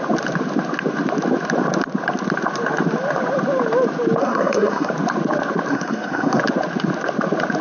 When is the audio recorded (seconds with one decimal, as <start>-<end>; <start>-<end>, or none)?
0.0-4.2; 4.9-5.7; 6.4-7.6

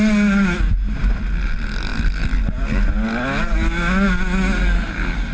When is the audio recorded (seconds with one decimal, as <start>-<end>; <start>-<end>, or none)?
0.0-5.3

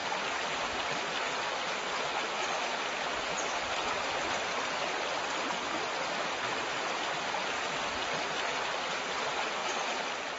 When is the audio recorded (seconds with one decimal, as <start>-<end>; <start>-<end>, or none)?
0.0-9.6

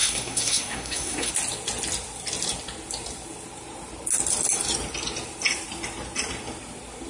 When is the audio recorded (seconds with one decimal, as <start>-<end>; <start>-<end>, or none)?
1.3-7.1

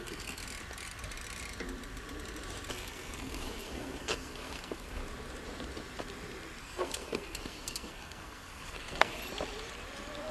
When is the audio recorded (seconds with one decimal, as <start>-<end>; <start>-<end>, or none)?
0.4-2.7; 5.0-6.6; 9.2-10.3

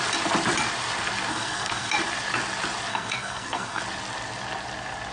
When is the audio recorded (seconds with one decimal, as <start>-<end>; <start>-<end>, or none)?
0.0-1.3; 1.9-2.9; 3.8-5.1

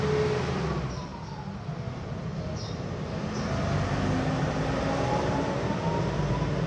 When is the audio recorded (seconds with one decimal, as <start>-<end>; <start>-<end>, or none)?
0.0-6.7

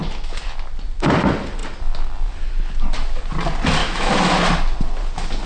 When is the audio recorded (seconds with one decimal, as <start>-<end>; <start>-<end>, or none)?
0.0-3.8; 4.3-5.5